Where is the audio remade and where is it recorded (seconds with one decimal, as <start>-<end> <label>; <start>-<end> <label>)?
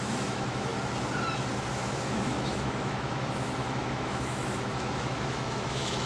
0.0-0.7 remade; 0.7-1.7 recorded; 1.7-6.1 remade